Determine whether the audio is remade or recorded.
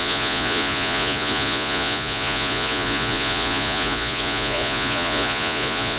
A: remade